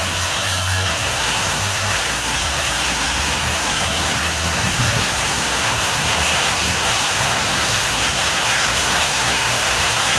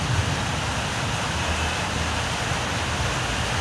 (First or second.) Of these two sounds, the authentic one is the second